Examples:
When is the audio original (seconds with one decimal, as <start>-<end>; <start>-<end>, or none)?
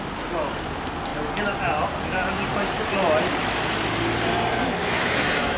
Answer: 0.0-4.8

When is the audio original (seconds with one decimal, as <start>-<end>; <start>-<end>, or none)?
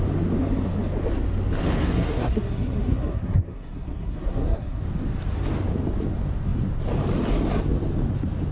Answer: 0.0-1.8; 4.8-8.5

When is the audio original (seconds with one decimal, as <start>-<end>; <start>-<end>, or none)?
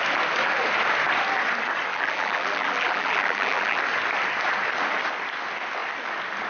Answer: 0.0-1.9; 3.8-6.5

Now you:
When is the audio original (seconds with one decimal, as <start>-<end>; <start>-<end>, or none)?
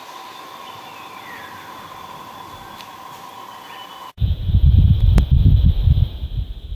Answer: 0.0-4.0; 4.8-6.7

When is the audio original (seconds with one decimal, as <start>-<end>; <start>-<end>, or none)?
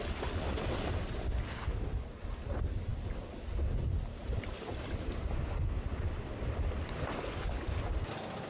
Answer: 0.0-2.9; 5.4-5.9; 7.2-8.5